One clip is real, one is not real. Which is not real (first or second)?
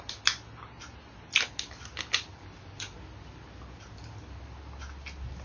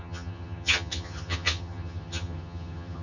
second